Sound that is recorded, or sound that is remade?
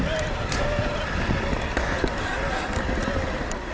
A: recorded